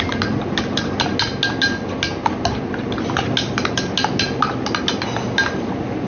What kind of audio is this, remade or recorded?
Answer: recorded